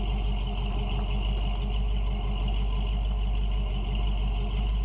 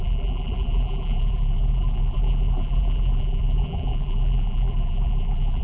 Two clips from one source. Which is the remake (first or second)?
second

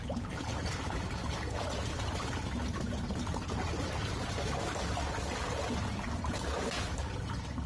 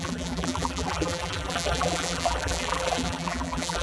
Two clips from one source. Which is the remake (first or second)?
second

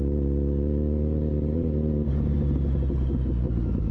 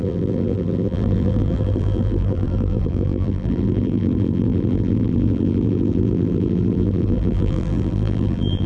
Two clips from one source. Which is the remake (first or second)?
second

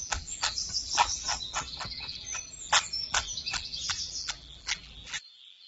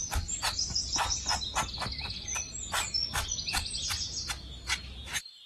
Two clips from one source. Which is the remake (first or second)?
first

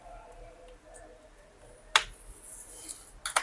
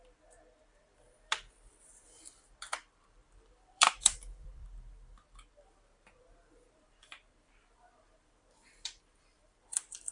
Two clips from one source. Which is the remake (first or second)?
second